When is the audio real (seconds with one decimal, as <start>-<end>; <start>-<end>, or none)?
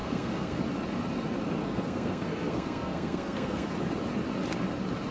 0.6-1.6; 3.7-5.1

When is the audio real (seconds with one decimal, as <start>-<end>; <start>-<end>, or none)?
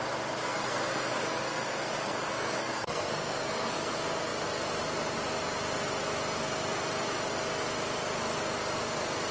0.0-0.4; 3.9-9.3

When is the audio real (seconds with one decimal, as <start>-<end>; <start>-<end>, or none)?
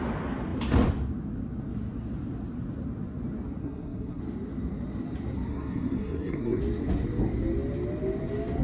0.0-3.6; 4.2-5.5; 6.6-8.6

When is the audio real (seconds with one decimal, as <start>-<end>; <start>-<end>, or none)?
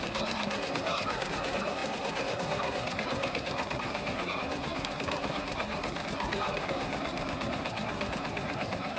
none